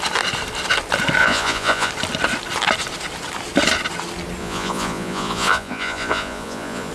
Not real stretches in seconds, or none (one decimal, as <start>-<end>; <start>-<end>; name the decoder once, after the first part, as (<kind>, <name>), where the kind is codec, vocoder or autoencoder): 1.2-1.9 (vocoder, Vocos); 4.4-6.9